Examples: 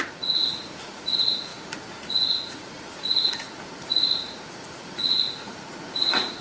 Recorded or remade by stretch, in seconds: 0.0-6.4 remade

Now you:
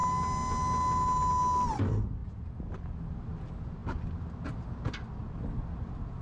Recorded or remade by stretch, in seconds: 0.0-6.2 recorded

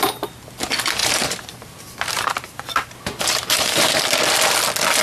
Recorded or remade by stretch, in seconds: 0.0-1.0 recorded; 1.0-4.0 remade; 4.0-5.0 recorded